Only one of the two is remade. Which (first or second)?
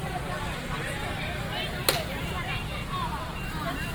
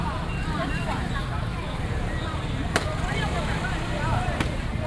second